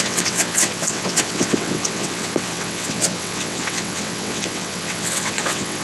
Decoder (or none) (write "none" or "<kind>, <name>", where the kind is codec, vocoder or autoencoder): vocoder, WaveNeXt